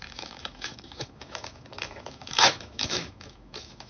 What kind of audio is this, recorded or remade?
remade